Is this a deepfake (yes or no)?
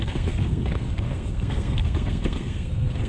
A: yes